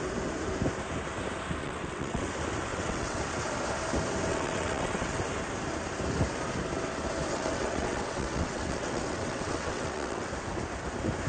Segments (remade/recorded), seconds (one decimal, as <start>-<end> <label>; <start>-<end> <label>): 0.0-1.6 recorded; 1.6-2.3 remade; 2.3-2.7 recorded; 2.7-3.2 remade; 3.2-4.3 recorded; 4.3-5.2 remade; 5.2-7.3 recorded; 7.3-10.3 remade; 10.3-11.3 recorded